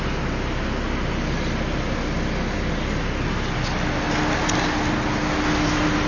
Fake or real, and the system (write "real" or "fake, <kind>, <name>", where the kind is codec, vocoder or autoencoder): real